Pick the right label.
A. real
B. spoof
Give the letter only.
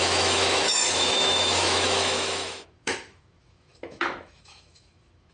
B